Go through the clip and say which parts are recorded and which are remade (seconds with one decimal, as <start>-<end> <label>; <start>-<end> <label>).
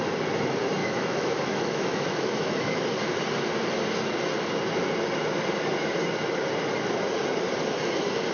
0.0-0.8 recorded; 0.8-2.8 remade; 2.8-8.3 recorded